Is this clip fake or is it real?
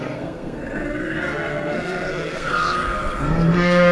fake